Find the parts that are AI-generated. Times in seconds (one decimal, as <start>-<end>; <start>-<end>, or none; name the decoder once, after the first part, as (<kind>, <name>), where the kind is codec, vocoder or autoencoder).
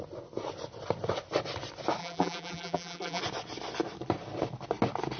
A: 2.0-3.2 (vocoder, BigVGAN v2)